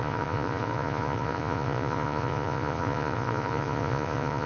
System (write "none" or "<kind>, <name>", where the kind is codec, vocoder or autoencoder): vocoder, Vocos